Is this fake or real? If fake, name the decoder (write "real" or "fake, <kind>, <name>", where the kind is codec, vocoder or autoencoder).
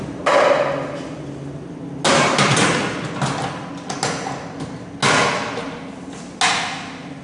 real